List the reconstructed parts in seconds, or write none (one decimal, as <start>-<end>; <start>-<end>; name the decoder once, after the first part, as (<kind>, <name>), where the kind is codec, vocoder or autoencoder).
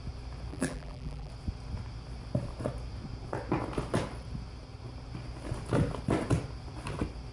0.5-1.3 (vocoder, BigVGAN v2)